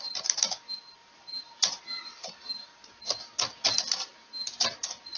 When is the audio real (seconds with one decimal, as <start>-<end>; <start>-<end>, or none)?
0.0-1.0; 3.1-4.1; 4.7-5.2